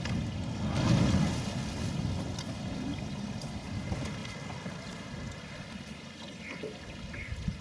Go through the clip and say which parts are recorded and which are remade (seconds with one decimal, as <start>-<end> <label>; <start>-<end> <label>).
0.0-7.6 recorded